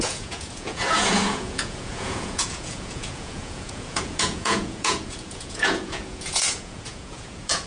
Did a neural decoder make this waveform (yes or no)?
yes